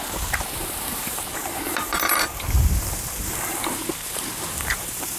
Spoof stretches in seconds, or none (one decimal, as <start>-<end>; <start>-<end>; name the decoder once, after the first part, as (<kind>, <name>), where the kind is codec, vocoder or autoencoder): 0.0-5.2 (vocoder, BigVGAN v2)